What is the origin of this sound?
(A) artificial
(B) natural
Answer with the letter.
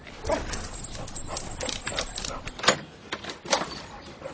B